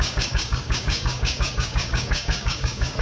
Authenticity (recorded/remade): remade